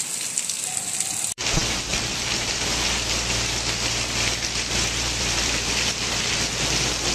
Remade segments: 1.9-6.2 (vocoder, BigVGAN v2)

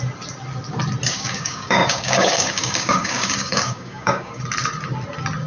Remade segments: 1.1-4.4 (codec, DAC)

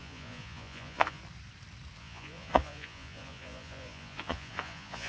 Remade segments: 0.0-1.2 (vocoder, Vocos); 2.0-5.1